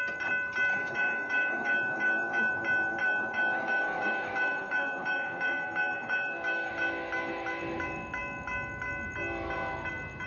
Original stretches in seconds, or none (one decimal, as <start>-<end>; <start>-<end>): 0.0-0.7; 2.5-3.0; 6.7-10.3

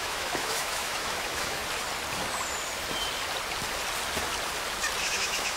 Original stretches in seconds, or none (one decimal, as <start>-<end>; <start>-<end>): 1.6-5.0

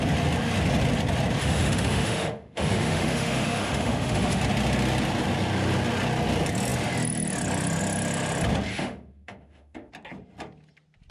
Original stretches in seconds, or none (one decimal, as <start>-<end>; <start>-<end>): 0.0-1.4; 4.4-8.7; 9.9-11.1

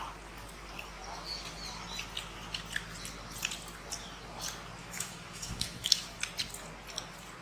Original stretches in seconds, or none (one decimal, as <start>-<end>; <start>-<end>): 0.0-4.8; 6.2-7.4